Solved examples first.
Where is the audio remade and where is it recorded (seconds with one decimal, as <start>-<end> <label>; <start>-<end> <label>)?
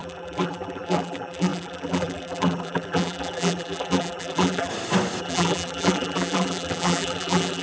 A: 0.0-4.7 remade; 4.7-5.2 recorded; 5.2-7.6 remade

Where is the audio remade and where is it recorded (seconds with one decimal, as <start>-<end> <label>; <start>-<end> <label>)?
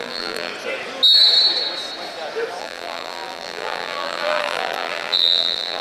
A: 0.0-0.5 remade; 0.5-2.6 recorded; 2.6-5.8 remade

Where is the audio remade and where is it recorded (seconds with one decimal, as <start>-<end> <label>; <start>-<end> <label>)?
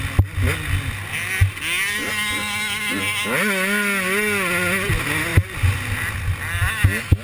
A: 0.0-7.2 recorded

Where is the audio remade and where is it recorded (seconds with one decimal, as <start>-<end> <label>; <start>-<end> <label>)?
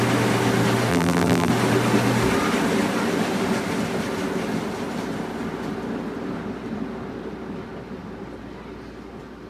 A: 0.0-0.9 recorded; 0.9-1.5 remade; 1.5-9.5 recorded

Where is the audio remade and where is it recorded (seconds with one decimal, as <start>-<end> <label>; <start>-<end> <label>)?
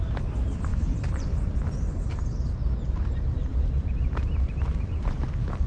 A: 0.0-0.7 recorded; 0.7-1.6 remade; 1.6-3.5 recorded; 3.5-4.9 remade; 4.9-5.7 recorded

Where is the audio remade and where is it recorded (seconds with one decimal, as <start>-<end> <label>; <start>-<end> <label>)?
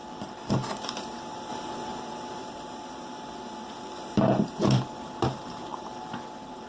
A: 0.0-6.7 remade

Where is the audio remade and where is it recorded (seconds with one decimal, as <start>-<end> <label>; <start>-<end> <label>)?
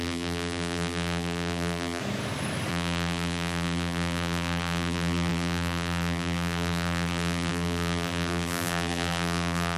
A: 0.0-2.0 remade; 2.0-2.7 recorded; 2.7-9.8 remade